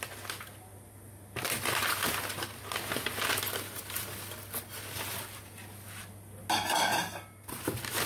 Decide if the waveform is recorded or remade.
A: recorded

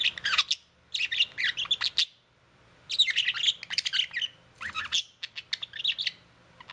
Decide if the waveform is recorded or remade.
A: recorded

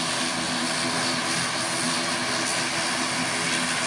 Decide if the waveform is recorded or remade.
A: recorded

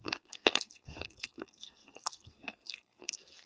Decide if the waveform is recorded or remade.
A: remade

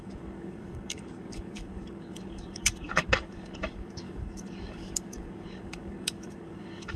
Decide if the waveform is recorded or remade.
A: remade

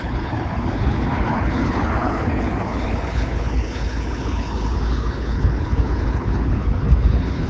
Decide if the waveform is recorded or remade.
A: remade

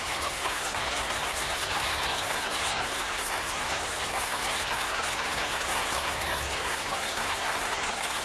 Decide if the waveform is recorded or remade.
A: remade